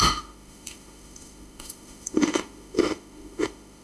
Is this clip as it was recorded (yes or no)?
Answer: no